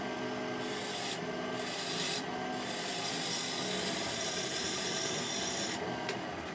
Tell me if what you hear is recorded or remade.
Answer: recorded